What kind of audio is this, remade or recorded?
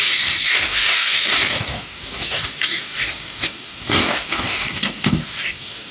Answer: remade